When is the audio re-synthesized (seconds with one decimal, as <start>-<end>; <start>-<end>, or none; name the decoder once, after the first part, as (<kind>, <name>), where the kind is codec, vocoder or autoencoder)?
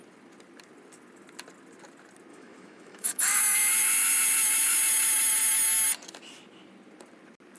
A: 2.3-3.4 (autoencoder, DAC-VAE)